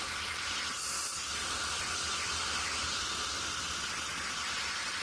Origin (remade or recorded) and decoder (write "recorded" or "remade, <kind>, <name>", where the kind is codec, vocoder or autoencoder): recorded